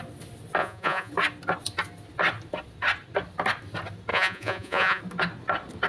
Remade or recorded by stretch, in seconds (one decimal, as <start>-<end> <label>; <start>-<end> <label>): 0.0-0.6 recorded; 0.6-1.1 remade; 1.1-4.1 recorded; 4.1-5.0 remade; 5.0-5.9 recorded